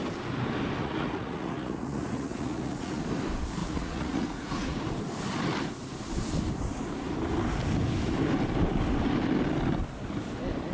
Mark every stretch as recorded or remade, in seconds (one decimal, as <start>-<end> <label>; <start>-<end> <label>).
0.0-0.8 recorded; 0.8-3.0 remade; 3.0-3.6 recorded; 3.6-4.8 remade; 4.8-10.7 recorded